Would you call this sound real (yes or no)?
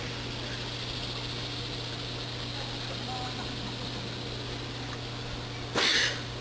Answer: yes